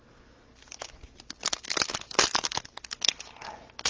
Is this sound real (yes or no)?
yes